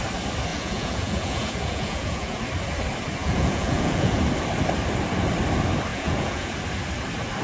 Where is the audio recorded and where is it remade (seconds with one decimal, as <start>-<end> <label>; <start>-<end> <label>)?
0.0-0.5 recorded; 0.5-2.4 remade; 2.4-3.2 recorded; 3.2-4.2 remade; 4.2-5.9 recorded; 5.9-6.5 remade; 6.5-7.4 recorded